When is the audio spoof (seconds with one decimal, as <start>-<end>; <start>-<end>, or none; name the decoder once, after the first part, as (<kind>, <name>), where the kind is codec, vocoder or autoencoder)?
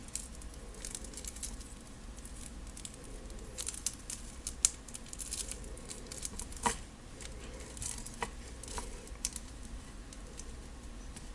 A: none